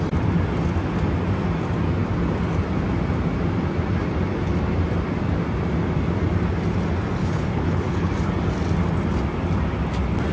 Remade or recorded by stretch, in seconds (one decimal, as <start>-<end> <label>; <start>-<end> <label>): 0.0-7.2 recorded; 7.2-8.1 remade; 8.1-10.3 recorded

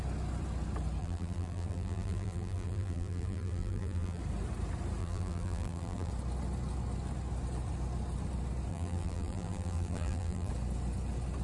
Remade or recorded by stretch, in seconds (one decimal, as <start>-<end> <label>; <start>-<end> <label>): 0.0-1.0 recorded; 1.0-4.2 remade; 4.2-5.0 recorded; 5.0-6.1 remade; 6.1-8.7 recorded; 8.7-10.5 remade; 10.5-11.4 recorded

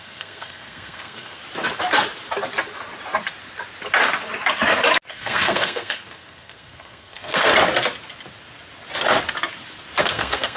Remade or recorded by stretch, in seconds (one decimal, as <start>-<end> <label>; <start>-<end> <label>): 0.0-1.4 remade; 1.4-5.1 recorded; 5.1-7.5 remade; 7.5-10.0 recorded; 10.0-10.6 remade

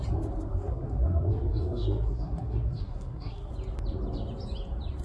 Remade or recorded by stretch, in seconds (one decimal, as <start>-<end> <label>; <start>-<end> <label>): 0.0-0.5 recorded; 0.5-3.5 remade; 3.5-5.0 recorded